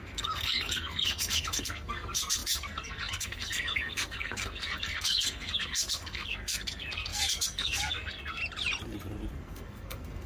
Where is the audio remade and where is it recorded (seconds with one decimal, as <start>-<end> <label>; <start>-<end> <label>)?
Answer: 0.0-8.4 remade; 8.4-9.3 recorded; 9.3-10.3 remade